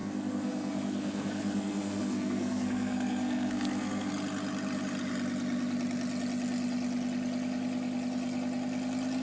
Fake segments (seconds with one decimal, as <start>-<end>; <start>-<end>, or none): 0.0-4.1